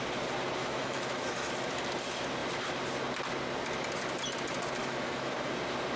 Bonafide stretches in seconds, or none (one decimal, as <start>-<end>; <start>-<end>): 0.0-0.6; 1.5-4.8; 5.5-6.0